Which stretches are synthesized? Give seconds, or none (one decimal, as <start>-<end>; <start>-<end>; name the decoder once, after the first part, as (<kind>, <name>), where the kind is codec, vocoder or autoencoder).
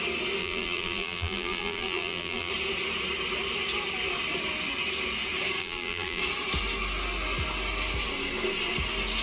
0.4-2.5 (vocoder, BigVGAN v2); 5.6-6.2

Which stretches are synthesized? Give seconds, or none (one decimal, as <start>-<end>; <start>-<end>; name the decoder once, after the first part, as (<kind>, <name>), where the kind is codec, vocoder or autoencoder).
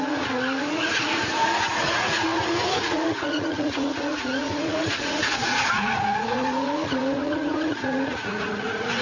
0.0-9.0 (vocoder, Vocos)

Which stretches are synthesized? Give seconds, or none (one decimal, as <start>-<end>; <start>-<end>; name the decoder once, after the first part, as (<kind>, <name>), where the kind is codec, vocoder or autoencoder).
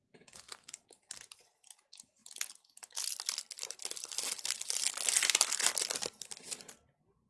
0.0-1.0 (autoencoder, DAC-VAE)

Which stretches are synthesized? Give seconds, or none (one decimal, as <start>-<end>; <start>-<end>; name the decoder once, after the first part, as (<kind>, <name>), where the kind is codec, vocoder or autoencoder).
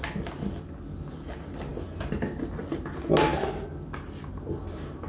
none